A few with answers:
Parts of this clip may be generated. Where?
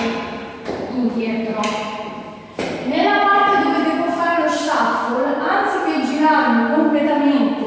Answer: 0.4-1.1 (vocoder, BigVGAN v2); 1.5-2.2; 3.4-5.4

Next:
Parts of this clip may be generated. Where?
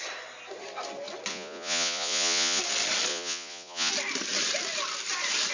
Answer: 1.3-2.6 (vocoder, Vocos); 3.1-3.9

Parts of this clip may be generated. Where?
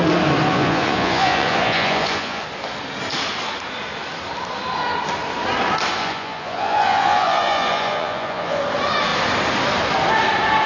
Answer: 0.5-2.4 (vocoder, Vocos); 6.0-8.6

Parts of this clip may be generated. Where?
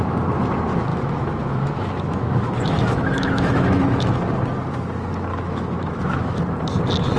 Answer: 0.9-4.1 (autoencoder, DAC-VAE); 5.3-6.4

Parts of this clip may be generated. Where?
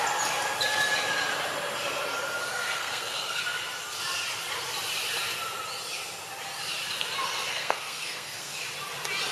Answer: 2.5-3.4 (codec, SNAC); 7.5-8.6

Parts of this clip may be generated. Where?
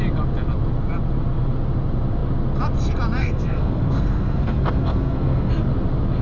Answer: 3.2-5.5 (codec, SNAC)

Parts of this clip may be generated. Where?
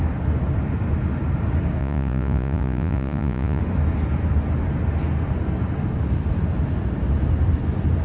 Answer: 1.8-3.6 (vocoder, Vocos)